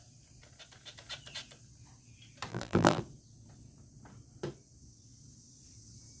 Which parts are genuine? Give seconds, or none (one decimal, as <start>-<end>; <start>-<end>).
0.0-2.5; 3.0-6.2